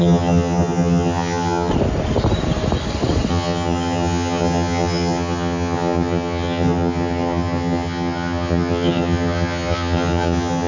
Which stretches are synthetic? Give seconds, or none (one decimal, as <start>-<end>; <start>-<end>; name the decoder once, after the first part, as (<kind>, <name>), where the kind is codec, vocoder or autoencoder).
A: 0.0-1.7 (vocoder, HiFi-GAN); 3.3-10.7